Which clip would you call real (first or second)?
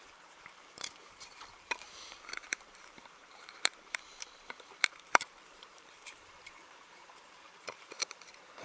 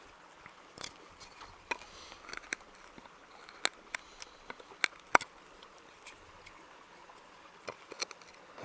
second